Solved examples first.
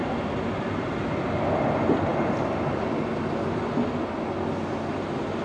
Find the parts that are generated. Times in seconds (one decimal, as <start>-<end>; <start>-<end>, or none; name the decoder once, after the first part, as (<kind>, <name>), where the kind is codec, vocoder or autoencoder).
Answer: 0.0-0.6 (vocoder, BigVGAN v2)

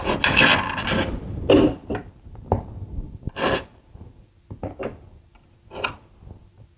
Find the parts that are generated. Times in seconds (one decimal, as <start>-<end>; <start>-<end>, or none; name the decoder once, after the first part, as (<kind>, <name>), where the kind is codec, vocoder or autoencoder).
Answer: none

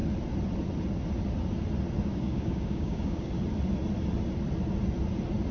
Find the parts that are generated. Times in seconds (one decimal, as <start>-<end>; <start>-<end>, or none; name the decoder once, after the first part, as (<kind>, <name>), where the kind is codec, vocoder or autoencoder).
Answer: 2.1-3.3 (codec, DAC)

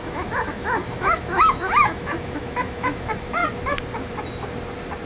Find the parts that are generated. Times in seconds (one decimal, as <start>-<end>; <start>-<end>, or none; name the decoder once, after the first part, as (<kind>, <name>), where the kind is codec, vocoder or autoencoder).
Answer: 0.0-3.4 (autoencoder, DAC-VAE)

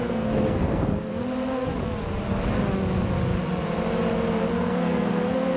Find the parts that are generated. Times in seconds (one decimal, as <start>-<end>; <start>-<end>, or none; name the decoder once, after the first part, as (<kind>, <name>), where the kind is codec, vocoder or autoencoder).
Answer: 0.0-1.1 (codec, SNAC); 4.5-5.6

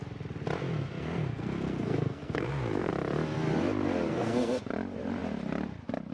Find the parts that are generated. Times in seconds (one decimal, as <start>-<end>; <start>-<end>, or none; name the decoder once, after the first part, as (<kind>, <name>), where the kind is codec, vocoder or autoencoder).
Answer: 0.6-2.9 (codec, SNAC); 4.1-4.6

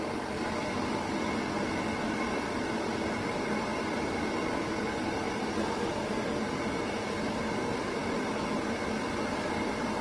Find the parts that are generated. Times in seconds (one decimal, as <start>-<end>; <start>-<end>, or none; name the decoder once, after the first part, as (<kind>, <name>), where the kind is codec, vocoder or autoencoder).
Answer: none

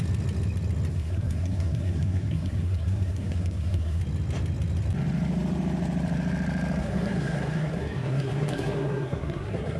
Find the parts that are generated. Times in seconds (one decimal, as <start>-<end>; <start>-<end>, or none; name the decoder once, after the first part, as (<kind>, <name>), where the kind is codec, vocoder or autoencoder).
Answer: 0.9-4.0 (codec, SNAC); 6.8-9.8